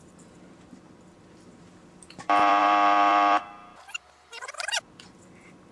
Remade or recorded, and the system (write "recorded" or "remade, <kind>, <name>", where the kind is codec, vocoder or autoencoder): remade, vocoder, BigVGAN v2